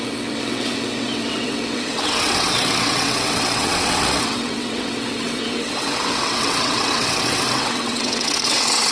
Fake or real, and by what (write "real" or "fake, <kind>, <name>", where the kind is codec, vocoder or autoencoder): fake, vocoder, WaveNeXt